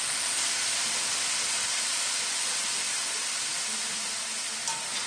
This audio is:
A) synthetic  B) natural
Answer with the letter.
B